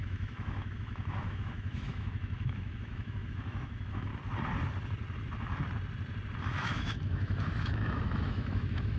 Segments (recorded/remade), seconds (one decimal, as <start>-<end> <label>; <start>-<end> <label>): 0.0-4.1 remade; 4.1-6.4 recorded; 6.4-9.0 remade